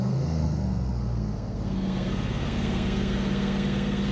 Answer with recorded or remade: remade